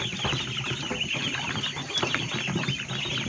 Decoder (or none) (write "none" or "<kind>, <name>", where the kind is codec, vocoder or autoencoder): none